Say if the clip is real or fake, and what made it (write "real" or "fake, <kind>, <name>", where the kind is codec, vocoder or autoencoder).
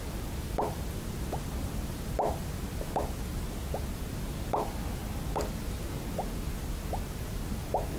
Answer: real